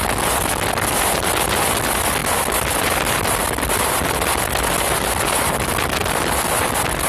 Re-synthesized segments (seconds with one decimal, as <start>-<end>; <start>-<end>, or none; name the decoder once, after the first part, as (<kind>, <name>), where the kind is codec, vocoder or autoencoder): 6.0-7.1 (vocoder, BigVGAN v2)